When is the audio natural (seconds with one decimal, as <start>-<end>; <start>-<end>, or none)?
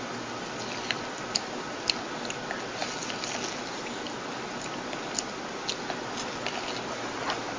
0.0-7.6